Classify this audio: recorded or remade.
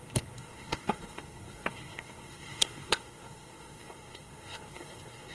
remade